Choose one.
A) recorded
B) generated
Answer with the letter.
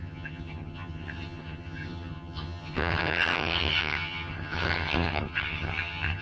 B